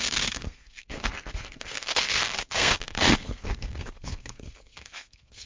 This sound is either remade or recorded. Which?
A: remade